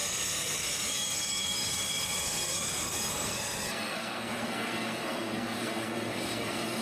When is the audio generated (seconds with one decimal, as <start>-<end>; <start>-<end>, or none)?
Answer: 0.0-6.8